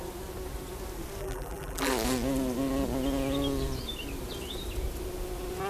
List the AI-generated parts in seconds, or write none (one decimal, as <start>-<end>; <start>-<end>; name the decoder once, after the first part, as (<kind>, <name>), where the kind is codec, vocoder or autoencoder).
1.2-1.9 (vocoder, BigVGAN v2)